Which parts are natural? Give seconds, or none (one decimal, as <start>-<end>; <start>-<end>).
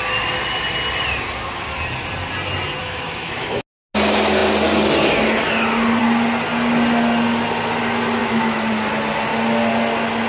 0.0-2.8; 3.5-8.2; 8.7-10.3